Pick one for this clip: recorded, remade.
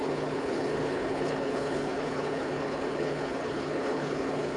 remade